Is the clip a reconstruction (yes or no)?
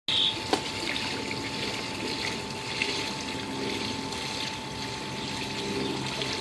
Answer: no